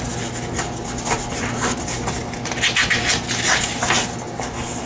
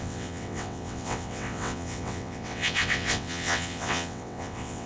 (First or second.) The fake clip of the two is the second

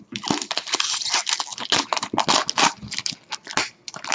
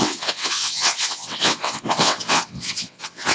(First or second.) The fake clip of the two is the second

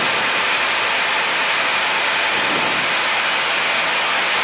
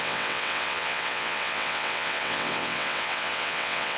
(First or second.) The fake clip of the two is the second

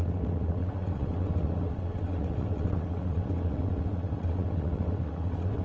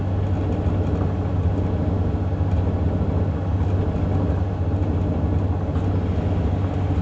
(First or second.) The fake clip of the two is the first